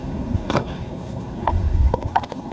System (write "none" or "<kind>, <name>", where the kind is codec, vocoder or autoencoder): codec, SNAC